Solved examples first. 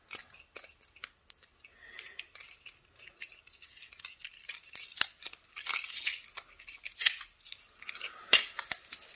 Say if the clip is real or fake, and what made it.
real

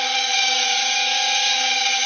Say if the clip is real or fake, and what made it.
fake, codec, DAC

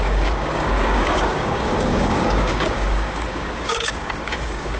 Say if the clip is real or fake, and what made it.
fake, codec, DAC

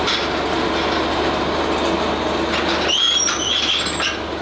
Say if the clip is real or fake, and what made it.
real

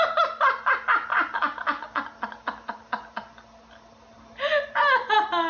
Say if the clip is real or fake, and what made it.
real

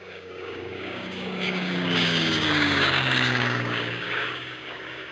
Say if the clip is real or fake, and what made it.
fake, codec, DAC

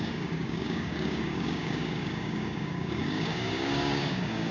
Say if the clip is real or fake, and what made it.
fake, codec, DAC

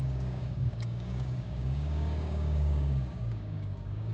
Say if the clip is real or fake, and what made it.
fake, codec, DAC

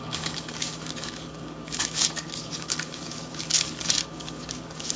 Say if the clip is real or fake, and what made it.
fake, codec, DAC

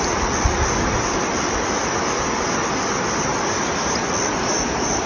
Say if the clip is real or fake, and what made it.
real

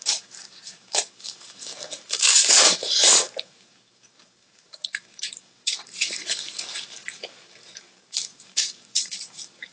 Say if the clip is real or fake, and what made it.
fake, codec, DAC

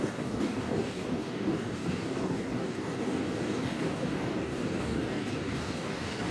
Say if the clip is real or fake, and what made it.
fake, codec, DAC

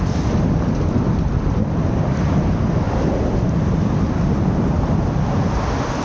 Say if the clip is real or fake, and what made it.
real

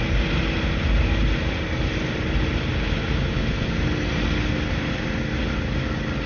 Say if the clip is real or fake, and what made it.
real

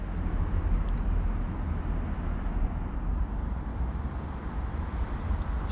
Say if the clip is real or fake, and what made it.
real